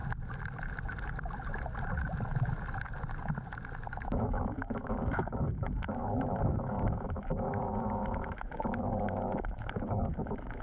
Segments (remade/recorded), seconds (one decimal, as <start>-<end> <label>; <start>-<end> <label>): 0.0-3.9 recorded; 3.9-10.6 remade